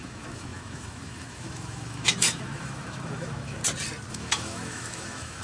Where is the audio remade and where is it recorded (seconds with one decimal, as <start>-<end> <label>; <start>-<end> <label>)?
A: 0.0-3.6 remade; 3.6-4.1 recorded; 4.1-5.4 remade